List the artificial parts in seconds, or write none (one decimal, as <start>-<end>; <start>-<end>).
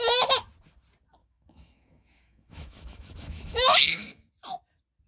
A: 1.2-4.3